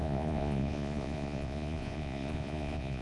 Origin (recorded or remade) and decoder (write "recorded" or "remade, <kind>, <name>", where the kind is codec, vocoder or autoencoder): remade, vocoder, Vocos